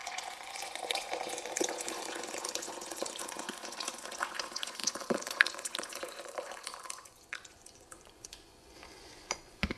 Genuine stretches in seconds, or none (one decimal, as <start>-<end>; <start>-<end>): none